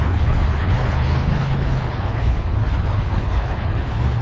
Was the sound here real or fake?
fake